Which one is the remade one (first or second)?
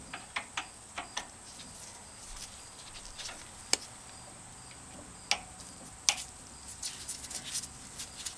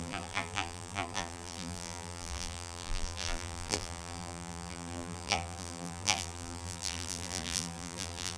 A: second